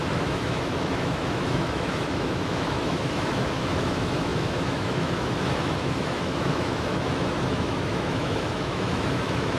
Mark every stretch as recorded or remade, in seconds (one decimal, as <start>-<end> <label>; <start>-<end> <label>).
0.0-9.6 remade